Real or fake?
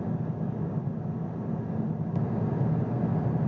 real